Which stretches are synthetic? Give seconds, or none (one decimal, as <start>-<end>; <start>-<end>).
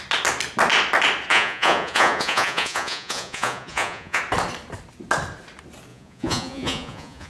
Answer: 1.3-4.2; 5.9-7.3